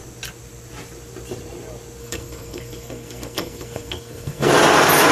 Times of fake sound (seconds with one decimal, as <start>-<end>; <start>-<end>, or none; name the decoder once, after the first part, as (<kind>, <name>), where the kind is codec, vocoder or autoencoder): 2.0-4.5 (codec, SNAC)